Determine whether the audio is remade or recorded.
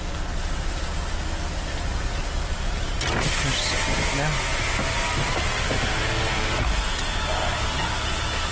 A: recorded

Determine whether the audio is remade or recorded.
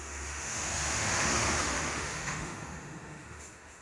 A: remade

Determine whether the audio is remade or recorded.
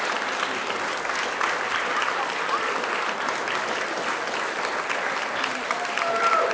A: recorded